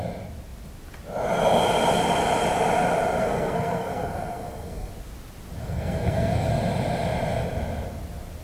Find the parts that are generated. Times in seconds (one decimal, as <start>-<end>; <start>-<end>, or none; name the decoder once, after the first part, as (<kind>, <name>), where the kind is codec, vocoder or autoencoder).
3.2-4.9 (codec, SNAC); 5.6-6.5

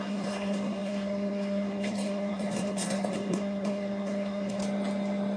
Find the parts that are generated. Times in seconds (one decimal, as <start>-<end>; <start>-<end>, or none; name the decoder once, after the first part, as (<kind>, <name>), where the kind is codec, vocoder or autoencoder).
0.0-4.6 (codec, SNAC)

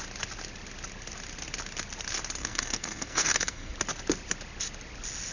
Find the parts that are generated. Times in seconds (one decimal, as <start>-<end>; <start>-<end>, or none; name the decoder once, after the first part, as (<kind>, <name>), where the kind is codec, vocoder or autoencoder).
2.4-3.7 (codec, SNAC)

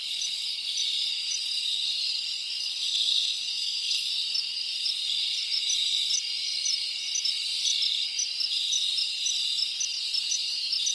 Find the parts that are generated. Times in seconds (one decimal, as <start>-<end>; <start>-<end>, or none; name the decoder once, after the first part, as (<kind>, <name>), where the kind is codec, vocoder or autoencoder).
2.6-4.1 (codec, SNAC)

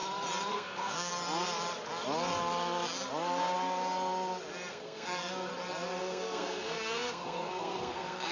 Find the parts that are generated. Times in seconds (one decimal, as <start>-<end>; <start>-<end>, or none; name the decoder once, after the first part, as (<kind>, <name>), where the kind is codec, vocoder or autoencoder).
0.5-1.1 (codec, SNAC); 4.7-5.5; 6.0-8.3

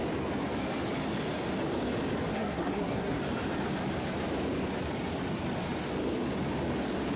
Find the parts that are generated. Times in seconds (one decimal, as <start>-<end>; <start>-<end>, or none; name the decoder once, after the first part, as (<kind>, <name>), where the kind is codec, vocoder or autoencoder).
2.3-3.2 (codec, SNAC)

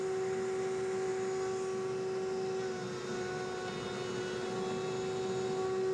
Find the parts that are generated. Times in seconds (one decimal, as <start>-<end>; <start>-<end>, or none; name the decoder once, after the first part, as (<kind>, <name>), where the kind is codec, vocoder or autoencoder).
none